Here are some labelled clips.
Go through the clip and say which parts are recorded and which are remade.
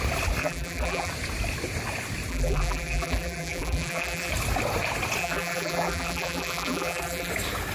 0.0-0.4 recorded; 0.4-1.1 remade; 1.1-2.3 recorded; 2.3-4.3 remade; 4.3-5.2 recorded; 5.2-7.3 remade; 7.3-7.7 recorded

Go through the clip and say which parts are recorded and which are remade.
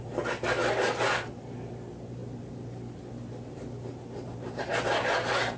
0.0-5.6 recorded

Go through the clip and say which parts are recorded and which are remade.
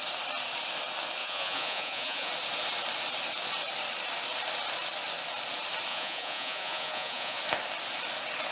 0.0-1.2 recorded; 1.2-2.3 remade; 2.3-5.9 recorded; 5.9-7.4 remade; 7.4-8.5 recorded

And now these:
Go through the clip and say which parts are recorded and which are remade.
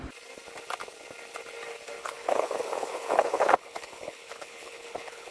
0.0-2.0 recorded; 2.0-5.3 remade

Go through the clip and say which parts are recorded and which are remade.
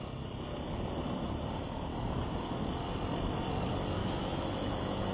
0.0-1.9 recorded; 1.9-2.5 remade; 2.5-4.0 recorded; 4.0-5.1 remade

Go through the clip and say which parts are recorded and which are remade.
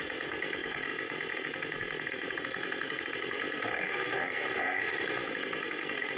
0.0-6.2 remade